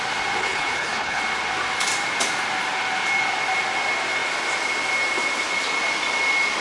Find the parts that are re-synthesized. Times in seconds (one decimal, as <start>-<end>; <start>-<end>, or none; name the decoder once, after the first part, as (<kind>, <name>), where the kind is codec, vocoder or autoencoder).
0.4-1.2 (codec, HILCodec)